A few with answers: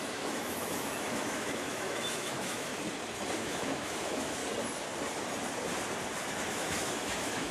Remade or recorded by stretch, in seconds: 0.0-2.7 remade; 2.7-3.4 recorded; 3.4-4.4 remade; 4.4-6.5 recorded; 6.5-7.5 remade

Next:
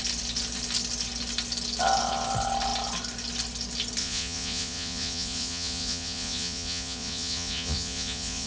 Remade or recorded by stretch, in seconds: 0.0-4.0 recorded; 4.0-8.5 remade

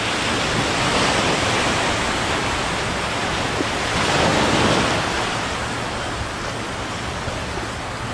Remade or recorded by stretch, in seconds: 0.0-8.1 recorded

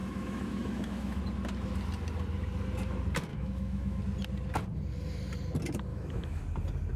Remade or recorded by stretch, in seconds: 0.0-1.2 remade; 1.2-3.3 recorded; 3.3-4.0 remade; 4.0-5.9 recorded; 5.9-6.4 remade; 6.4-7.0 recorded

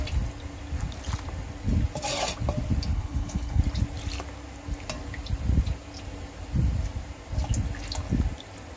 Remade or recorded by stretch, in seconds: 0.0-2.9 recorded; 2.9-3.6 remade; 3.6-8.8 recorded

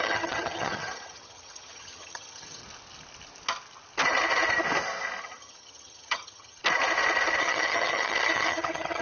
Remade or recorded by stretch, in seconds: 0.0-2.6 remade; 2.6-5.2 recorded; 5.2-6.6 remade; 6.6-7.4 recorded; 7.4-9.0 remade

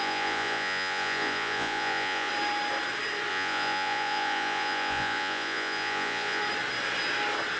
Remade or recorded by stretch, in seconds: 0.0-2.3 remade; 2.3-3.3 recorded; 3.3-6.4 remade; 6.4-7.6 recorded